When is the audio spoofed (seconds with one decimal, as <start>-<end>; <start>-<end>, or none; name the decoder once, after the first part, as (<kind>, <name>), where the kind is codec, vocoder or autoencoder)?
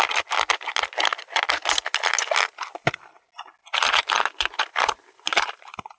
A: 3.6-6.0 (vocoder, BigVGAN v2)